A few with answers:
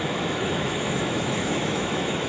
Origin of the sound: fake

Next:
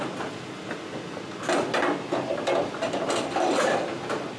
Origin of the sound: real